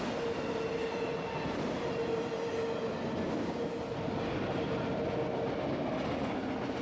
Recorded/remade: recorded